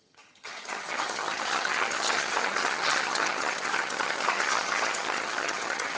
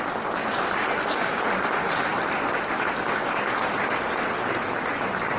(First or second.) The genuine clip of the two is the second